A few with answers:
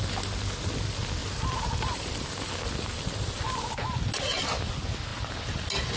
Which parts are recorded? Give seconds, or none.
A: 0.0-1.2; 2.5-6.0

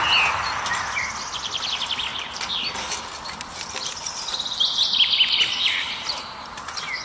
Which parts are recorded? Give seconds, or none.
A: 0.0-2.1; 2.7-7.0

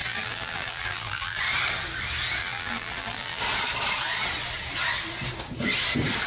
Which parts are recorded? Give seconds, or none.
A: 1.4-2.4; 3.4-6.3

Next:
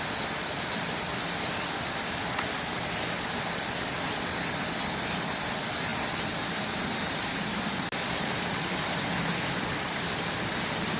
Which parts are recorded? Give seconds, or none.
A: 0.0-5.9

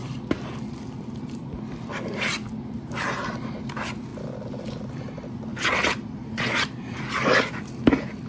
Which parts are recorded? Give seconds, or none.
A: 0.0-5.5; 7.1-8.3